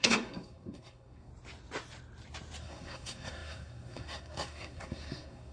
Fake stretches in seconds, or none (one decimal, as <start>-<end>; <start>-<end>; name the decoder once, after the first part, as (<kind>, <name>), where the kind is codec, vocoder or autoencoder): 0.0-1.3 (codec, SNAC); 2.6-5.5